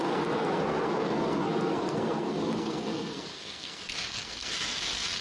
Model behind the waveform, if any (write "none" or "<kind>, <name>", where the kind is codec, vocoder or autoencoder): codec, SNAC